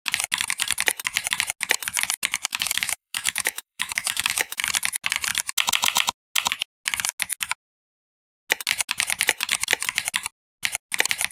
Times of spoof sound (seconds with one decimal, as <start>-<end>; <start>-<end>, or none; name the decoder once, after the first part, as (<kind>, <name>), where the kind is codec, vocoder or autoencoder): 2.5-4.6 (autoencoder, DAC-VAE)